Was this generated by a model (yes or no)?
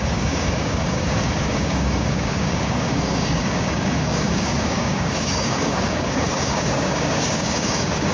yes